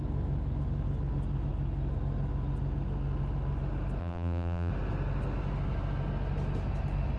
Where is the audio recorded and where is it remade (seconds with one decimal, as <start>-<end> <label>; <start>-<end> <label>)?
0.0-4.0 recorded; 4.0-4.7 remade; 4.7-7.2 recorded